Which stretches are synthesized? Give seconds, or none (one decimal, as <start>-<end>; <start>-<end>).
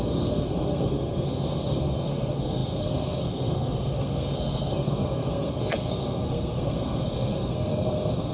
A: 0.0-8.3